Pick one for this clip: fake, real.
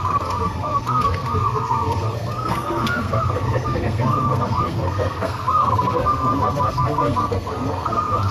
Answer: fake